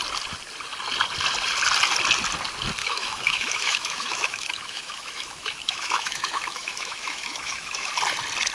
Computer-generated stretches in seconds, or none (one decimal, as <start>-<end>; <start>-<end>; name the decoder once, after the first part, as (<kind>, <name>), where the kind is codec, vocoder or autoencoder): 2.8-7.9 (autoencoder, DAC-VAE)